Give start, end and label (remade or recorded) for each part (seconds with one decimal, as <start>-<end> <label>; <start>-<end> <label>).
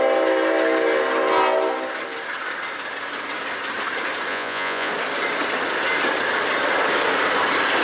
0.0-4.3 recorded; 4.3-4.9 remade; 4.9-7.8 recorded